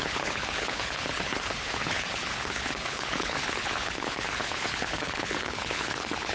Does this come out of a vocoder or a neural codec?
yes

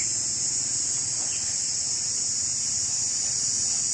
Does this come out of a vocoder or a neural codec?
no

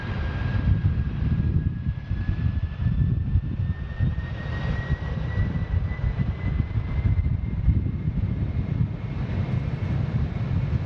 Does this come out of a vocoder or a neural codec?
yes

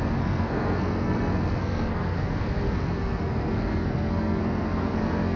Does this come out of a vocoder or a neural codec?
yes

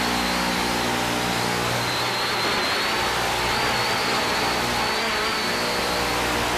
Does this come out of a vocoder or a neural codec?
no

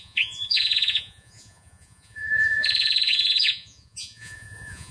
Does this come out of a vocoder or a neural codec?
yes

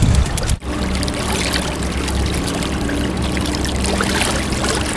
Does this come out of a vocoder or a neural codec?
no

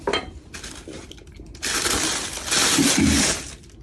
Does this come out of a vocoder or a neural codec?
no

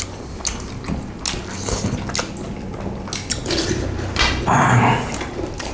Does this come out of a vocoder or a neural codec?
no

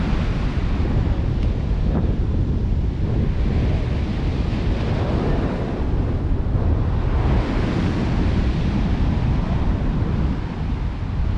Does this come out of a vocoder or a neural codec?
no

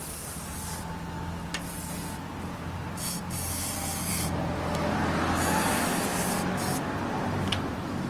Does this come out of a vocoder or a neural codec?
no